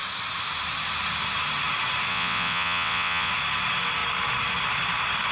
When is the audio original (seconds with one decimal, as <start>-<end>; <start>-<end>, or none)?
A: 0.0-2.1; 3.3-5.3